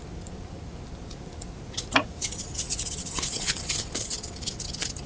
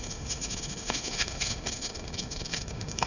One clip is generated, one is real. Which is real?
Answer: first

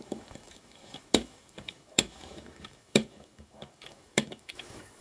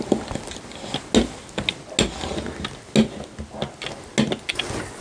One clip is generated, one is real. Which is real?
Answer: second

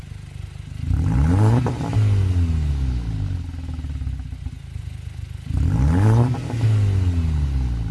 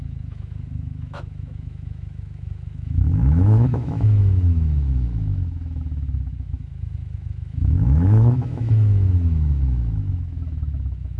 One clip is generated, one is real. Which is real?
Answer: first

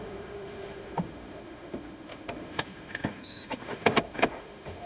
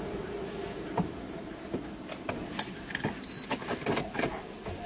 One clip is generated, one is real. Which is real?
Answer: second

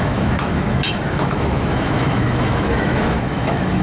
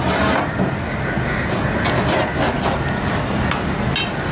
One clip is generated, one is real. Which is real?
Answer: second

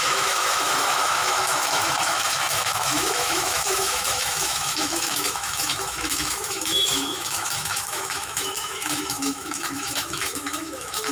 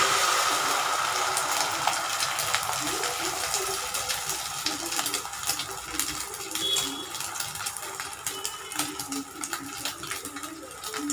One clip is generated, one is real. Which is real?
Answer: second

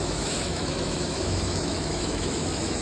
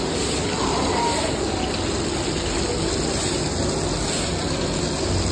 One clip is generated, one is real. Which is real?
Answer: second